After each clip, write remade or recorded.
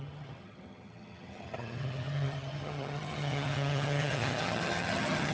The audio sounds remade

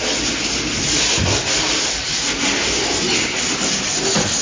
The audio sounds recorded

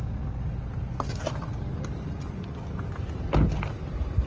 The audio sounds recorded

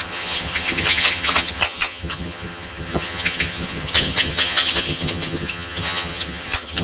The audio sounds remade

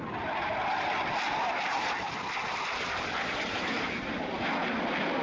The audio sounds recorded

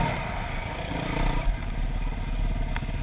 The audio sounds recorded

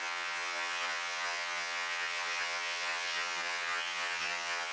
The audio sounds remade